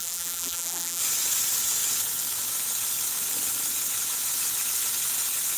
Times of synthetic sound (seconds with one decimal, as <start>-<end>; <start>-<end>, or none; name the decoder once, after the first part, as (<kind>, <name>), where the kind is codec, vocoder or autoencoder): 0.0-1.0 (vocoder, BigVGAN v2)

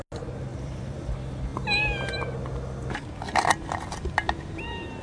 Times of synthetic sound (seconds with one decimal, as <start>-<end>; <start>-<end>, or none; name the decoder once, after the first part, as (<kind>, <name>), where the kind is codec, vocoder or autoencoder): 0.5-1.1 (vocoder, BigVGAN v2)

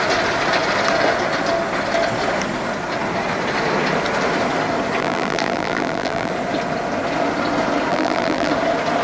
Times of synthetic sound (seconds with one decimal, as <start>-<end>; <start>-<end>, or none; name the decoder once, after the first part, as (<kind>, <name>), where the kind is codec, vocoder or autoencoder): 5.0-6.3 (vocoder, BigVGAN v2); 7.9-8.5